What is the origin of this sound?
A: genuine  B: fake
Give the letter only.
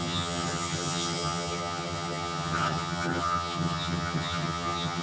B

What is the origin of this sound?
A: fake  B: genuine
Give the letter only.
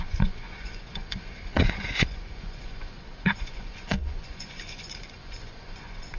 A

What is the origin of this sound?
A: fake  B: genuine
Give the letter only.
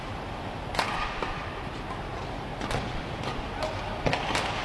A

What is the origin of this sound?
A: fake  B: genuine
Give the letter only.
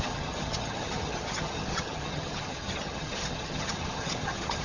A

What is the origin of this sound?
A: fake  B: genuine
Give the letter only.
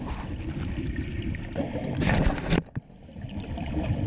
B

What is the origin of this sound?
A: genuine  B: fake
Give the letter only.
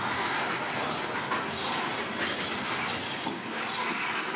A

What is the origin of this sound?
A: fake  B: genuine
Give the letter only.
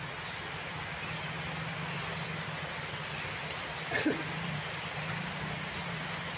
B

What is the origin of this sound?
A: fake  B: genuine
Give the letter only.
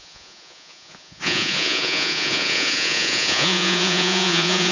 A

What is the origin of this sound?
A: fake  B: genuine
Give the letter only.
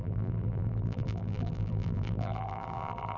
A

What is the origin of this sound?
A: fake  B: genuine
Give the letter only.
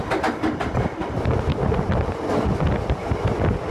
B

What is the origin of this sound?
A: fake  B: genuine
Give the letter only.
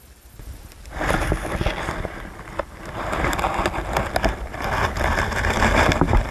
B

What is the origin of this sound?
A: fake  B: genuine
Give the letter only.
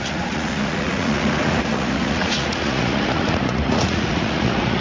A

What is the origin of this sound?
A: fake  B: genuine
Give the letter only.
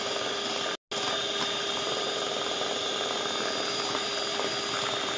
B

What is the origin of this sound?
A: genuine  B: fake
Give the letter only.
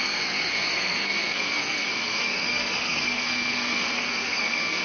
B